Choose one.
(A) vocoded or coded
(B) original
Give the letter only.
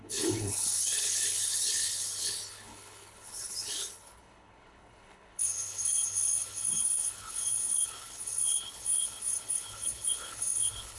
A